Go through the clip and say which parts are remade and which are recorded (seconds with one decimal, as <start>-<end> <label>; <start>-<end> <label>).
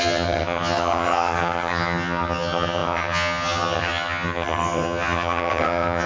0.0-6.1 remade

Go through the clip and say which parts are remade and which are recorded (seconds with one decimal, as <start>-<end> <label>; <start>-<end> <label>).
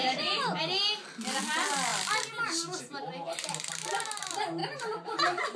0.0-0.6 remade; 0.6-5.6 recorded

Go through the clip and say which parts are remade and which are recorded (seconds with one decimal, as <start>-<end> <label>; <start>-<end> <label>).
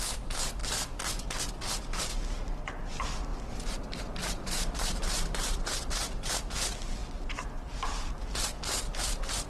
0.0-3.3 recorded; 3.3-6.2 remade; 6.2-7.0 recorded; 7.0-8.2 remade; 8.2-9.5 recorded